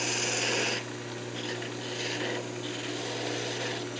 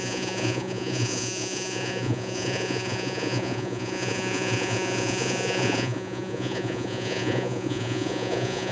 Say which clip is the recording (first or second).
first